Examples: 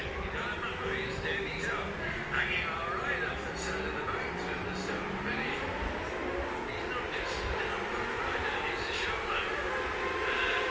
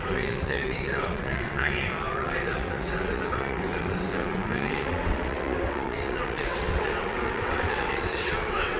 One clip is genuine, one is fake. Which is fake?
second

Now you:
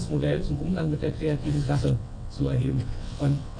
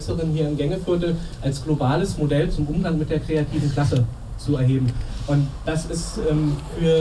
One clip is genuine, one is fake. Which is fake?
first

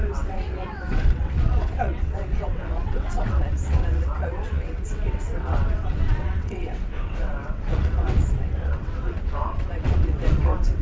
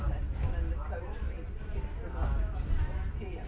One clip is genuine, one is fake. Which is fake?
first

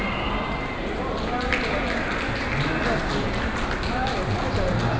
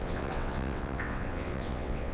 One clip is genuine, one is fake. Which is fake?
second